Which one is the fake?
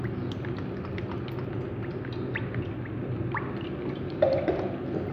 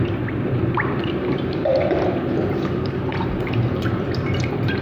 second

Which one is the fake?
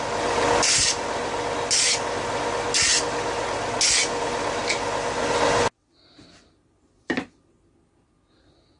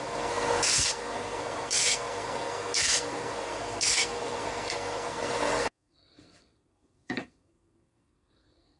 second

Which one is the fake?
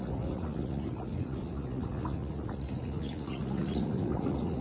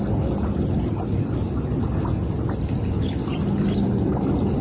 first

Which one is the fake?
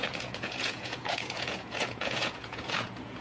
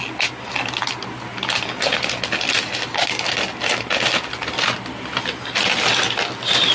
first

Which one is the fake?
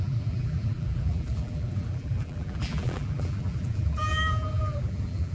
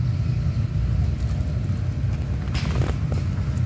first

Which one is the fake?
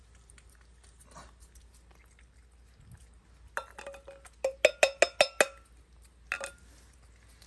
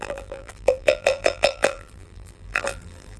second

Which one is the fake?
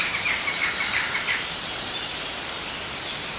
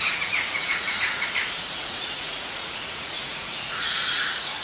second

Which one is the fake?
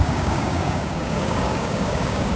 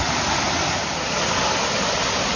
first